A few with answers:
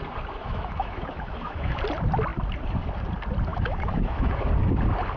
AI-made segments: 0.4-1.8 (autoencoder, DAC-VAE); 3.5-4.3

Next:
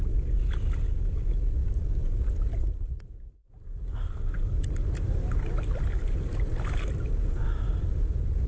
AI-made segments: none